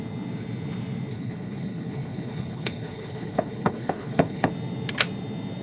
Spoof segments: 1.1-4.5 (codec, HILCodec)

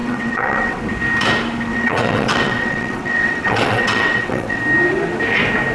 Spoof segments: 0.0-0.8 (vocoder, WaveNeXt); 1.7-4.6

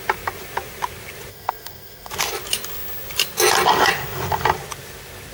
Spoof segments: 1.3-2.1 (codec, SNAC)

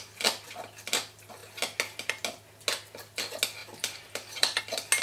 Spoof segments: 3.6-4.6 (vocoder, BigVGAN v2)

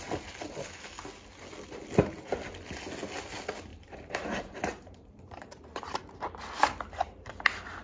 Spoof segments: 3.7-6.0 (vocoder, BigVGAN v2)

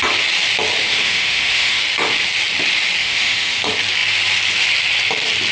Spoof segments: 0.8-1.8 (autoencoder, DAC-VAE); 3.0-3.6